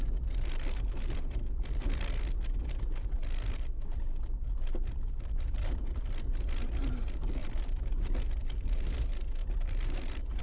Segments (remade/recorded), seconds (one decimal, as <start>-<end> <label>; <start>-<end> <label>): 0.0-7.4 recorded; 7.4-7.9 remade; 7.9-9.4 recorded; 9.4-10.4 remade